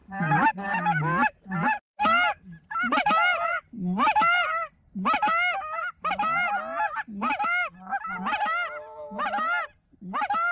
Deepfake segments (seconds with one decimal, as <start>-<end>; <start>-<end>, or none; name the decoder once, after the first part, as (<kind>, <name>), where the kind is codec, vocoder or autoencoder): none